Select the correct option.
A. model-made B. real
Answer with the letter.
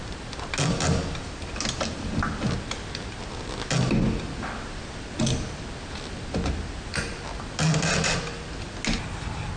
B